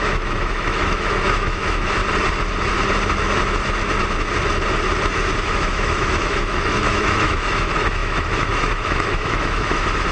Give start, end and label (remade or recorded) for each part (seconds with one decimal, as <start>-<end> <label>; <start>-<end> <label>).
0.0-2.0 remade; 2.0-5.4 recorded; 5.4-10.1 remade